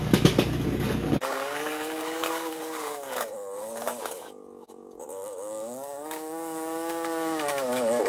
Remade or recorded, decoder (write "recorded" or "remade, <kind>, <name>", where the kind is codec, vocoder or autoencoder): remade, codec, DAC